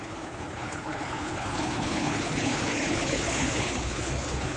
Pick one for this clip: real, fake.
fake